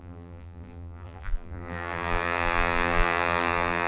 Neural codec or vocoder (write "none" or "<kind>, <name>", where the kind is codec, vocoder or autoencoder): vocoder, BigVGAN v2